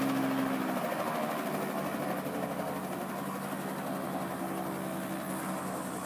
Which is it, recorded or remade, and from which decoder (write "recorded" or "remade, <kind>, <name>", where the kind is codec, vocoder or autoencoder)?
recorded